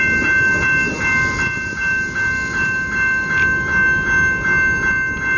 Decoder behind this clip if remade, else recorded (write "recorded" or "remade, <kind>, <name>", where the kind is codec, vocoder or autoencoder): recorded